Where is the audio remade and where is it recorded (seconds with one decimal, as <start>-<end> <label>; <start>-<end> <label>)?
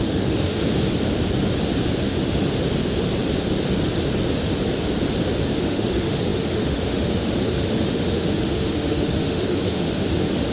0.0-0.6 remade; 0.6-2.0 recorded; 2.0-2.5 remade; 2.5-5.6 recorded; 5.6-10.5 remade